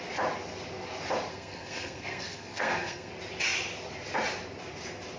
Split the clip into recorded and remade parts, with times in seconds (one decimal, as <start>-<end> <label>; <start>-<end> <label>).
0.0-1.3 recorded; 1.3-3.1 remade; 3.1-5.2 recorded